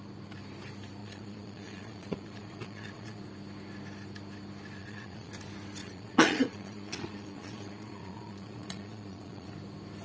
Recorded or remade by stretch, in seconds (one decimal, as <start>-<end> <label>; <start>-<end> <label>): 0.0-1.0 recorded; 1.0-3.2 remade; 3.2-4.8 recorded; 4.8-5.3 remade; 5.3-5.8 recorded; 5.8-9.5 remade; 9.5-10.0 recorded